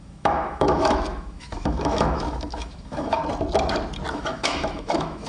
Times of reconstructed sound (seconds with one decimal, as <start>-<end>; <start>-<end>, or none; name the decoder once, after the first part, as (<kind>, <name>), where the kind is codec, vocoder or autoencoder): 0.0-3.2 (autoencoder, DAC-VAE); 4.1-5.3